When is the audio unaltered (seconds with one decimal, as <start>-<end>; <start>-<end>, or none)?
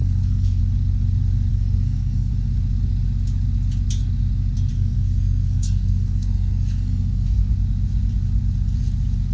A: 0.6-1.5; 2.3-4.7; 7.5-9.3